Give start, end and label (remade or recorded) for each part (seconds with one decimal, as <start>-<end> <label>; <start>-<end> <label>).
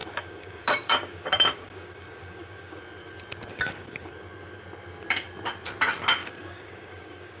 0.0-2.8 remade; 2.8-3.5 recorded; 3.5-4.1 remade; 4.1-6.2 recorded; 6.2-7.4 remade